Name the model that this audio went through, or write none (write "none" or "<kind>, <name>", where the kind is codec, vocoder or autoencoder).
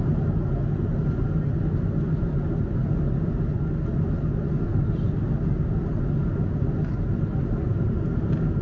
none